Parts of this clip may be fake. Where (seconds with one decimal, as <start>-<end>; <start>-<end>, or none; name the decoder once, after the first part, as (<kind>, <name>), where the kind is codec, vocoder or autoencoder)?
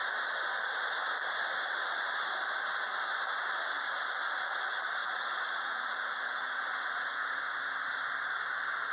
5.0-7.6 (vocoder, Vocos)